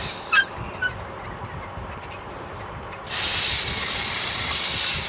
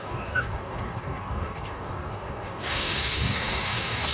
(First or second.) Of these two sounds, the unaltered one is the first